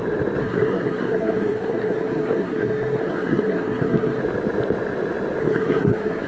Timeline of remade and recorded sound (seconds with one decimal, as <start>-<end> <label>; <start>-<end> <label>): 0.0-0.4 recorded; 0.4-4.2 remade; 4.2-5.4 recorded; 5.4-6.3 remade